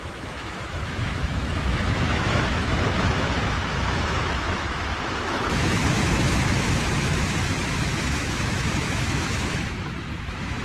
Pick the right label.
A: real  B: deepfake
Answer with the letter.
B